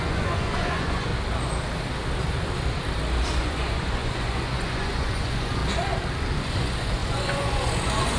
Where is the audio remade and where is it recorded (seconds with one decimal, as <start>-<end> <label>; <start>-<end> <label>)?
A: 0.0-1.1 remade; 1.1-3.2 recorded; 3.2-5.6 remade; 5.6-6.4 recorded; 6.4-8.2 remade